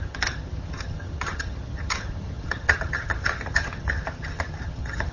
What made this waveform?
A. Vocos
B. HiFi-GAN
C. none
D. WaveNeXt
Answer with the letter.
B